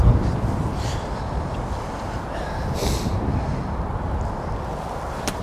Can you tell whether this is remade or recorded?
recorded